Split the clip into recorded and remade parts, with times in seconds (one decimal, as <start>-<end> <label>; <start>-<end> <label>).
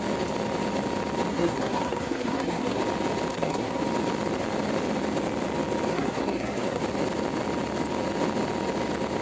0.0-1.3 recorded; 1.3-2.8 remade; 2.8-3.3 recorded; 3.3-3.8 remade; 3.8-5.9 recorded; 5.9-6.8 remade; 6.8-9.2 recorded